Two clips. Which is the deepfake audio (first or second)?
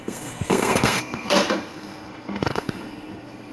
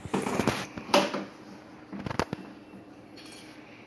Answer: first